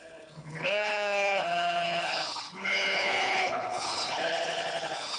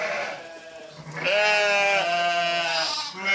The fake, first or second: first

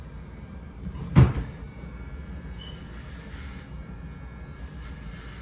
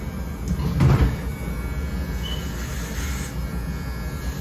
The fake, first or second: first